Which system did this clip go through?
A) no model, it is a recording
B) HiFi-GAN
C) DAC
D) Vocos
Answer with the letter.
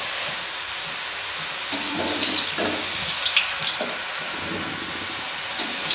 A